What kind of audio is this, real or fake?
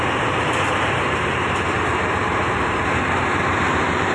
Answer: fake